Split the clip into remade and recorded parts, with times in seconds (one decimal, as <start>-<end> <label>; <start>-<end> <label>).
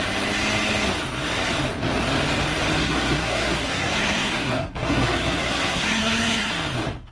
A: 0.0-2.8 recorded; 2.8-6.5 remade; 6.5-7.1 recorded